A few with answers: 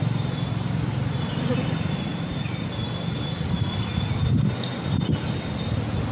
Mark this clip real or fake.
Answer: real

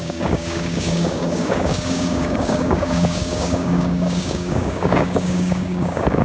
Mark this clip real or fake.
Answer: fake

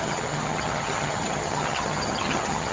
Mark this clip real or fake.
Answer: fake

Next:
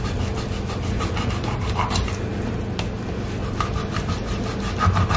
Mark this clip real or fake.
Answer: real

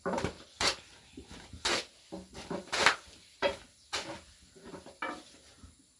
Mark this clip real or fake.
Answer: real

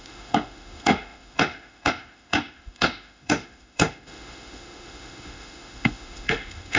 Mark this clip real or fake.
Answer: fake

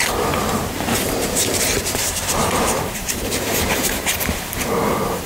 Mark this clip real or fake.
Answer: fake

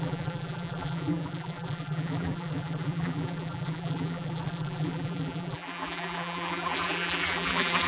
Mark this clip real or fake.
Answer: fake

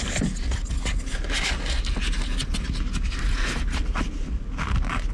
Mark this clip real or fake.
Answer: real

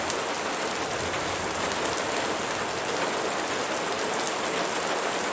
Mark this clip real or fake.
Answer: real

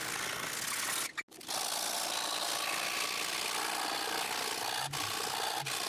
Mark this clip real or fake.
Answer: real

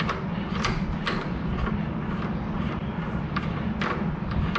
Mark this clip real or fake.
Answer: real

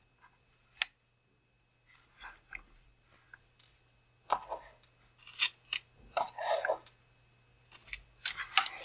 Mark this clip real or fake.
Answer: real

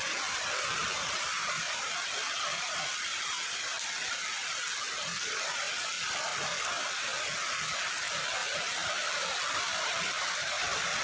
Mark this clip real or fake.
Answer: fake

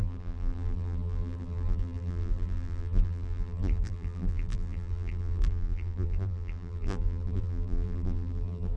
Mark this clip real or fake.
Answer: fake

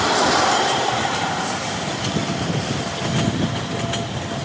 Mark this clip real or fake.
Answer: real